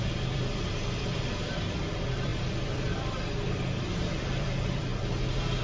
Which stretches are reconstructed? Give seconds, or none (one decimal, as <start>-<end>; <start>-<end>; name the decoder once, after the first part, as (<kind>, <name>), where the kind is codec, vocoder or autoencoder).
0.0-4.9 (vocoder, BigVGAN v2)